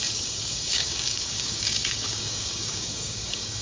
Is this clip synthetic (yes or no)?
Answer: yes